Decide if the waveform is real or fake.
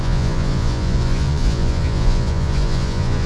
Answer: fake